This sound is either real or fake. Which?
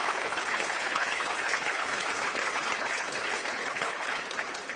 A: fake